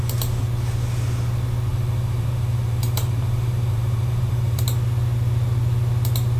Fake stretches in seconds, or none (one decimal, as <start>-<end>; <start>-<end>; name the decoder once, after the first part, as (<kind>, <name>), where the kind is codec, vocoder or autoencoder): 1.7-4.6 (vocoder, BigVGAN v2)